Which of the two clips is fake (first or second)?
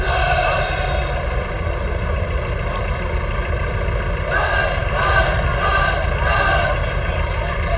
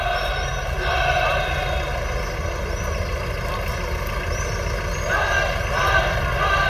first